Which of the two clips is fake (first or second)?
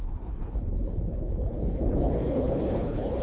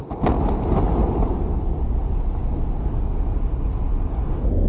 first